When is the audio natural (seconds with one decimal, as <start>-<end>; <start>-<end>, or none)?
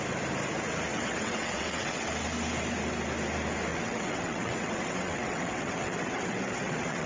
0.0-0.9; 2.1-3.7